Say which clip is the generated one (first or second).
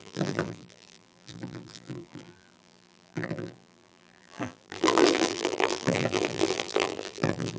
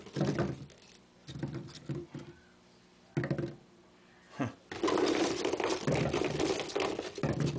first